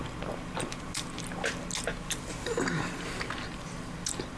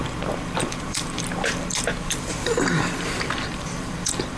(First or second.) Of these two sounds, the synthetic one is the second